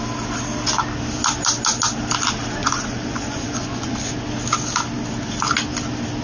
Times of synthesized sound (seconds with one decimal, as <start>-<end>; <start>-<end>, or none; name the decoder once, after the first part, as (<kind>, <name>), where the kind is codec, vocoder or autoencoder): 2.6-4.1 (vocoder, Vocos)